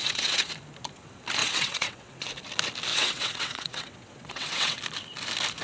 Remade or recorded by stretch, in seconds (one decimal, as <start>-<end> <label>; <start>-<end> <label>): 0.0-0.5 remade; 0.5-1.4 recorded; 1.4-2.3 remade; 2.3-2.9 recorded; 2.9-4.8 remade; 4.8-5.6 recorded